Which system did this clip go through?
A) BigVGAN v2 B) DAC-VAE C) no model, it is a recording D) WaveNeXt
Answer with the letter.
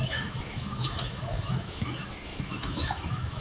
B